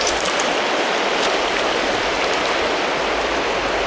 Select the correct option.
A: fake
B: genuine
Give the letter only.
B